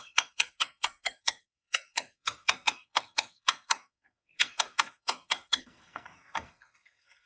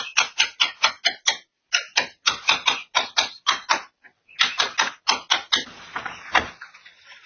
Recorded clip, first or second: second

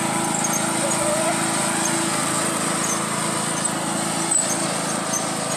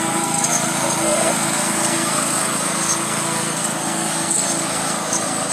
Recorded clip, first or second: first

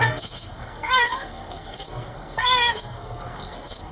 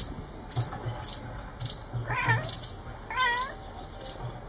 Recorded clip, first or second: second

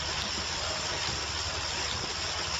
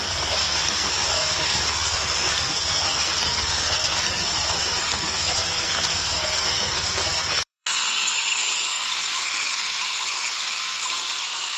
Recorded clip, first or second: first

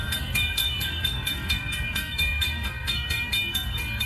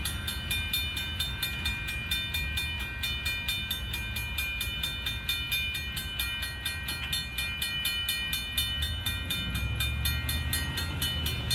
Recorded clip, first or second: second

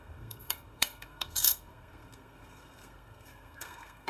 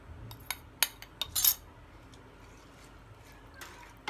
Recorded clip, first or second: second